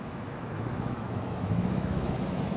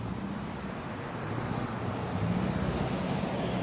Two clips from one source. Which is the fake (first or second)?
first